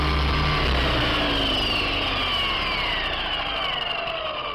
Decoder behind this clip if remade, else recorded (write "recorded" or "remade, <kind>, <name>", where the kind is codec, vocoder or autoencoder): recorded